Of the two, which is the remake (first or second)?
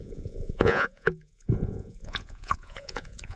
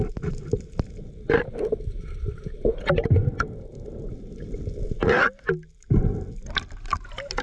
first